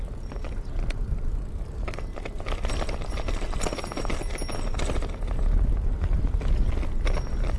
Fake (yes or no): no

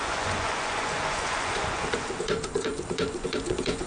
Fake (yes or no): yes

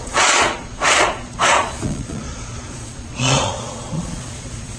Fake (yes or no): yes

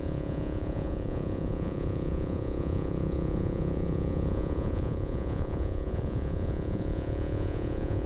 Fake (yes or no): yes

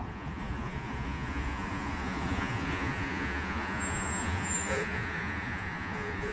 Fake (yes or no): yes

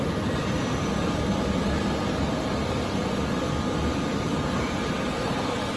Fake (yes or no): no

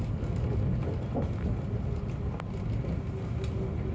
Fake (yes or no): no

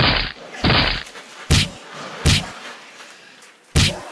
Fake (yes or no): no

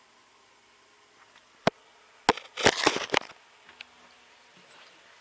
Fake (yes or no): no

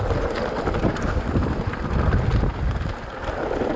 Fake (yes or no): no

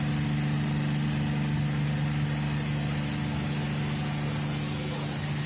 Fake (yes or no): no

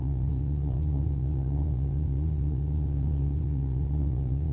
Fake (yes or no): yes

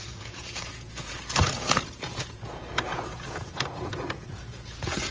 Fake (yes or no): yes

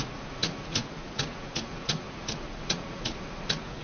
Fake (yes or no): yes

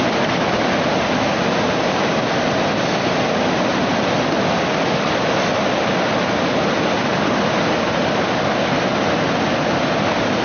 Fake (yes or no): no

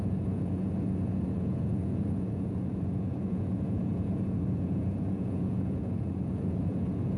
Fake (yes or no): yes